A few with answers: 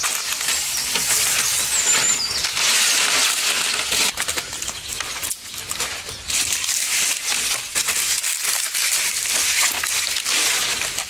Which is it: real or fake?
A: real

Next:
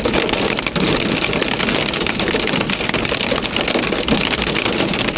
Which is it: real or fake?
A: real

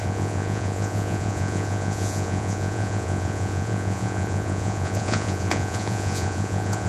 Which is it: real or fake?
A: fake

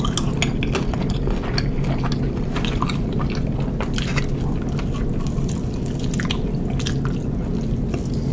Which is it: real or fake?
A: real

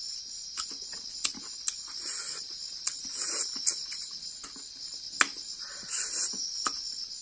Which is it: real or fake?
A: real